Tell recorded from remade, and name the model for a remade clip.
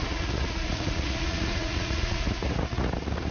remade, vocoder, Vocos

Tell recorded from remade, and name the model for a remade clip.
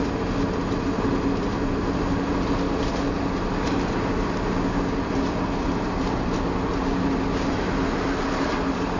recorded